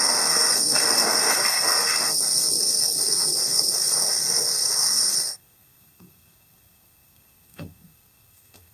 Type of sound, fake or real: fake